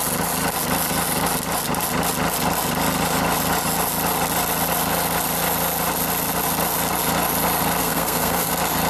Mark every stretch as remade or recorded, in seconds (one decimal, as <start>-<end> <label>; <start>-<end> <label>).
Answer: 0.0-7.8 recorded; 7.8-8.5 remade; 8.5-8.9 recorded